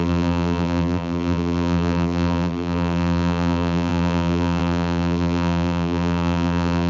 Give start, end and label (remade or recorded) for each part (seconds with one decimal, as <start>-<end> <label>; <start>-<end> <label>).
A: 0.0-6.9 remade